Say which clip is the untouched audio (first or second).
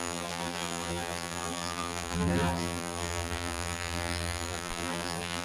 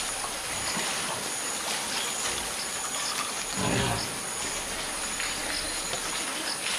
second